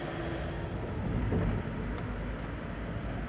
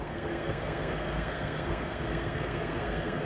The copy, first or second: second